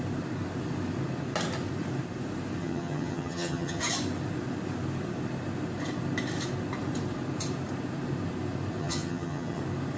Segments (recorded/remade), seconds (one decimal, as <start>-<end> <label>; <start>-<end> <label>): 0.0-2.6 recorded; 2.6-3.8 remade; 3.8-8.8 recorded; 8.8-9.6 remade; 9.6-10.0 recorded

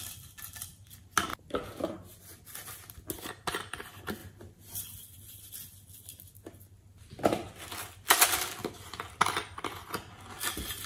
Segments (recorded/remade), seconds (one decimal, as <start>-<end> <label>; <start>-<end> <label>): 0.0-1.3 recorded; 1.3-2.2 remade; 2.2-4.2 recorded; 4.2-4.8 remade; 4.8-6.9 recorded; 6.9-7.5 remade; 7.5-8.6 recorded; 8.6-9.3 remade; 9.3-10.9 recorded

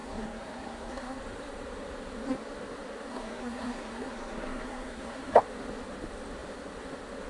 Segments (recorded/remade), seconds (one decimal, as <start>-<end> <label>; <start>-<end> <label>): 0.0-1.2 remade; 1.2-3.1 recorded; 3.1-5.4 remade; 5.4-7.3 recorded

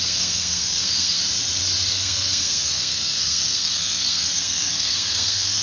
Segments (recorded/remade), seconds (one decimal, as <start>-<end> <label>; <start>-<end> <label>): 0.0-1.2 remade; 1.2-1.9 recorded; 1.9-5.6 remade

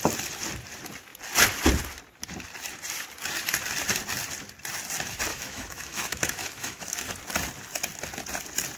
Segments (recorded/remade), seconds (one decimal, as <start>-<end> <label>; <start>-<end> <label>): 0.0-5.3 recorded; 5.3-7.1 remade; 7.1-8.8 recorded

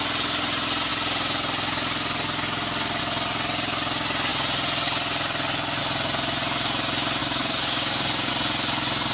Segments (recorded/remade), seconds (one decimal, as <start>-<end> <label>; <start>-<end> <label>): 0.0-7.2 recorded; 7.2-8.3 remade; 8.3-9.1 recorded

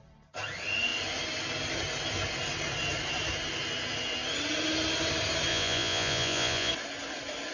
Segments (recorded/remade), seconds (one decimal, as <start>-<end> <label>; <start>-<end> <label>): 0.0-5.5 recorded; 5.5-6.7 remade; 6.7-7.5 recorded

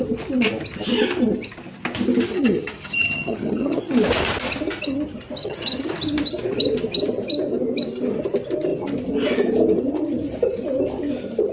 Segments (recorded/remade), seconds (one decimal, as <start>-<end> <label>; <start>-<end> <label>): 0.0-2.3 recorded; 2.3-3.8 remade; 3.8-5.4 recorded; 5.4-5.9 remade; 5.9-11.5 recorded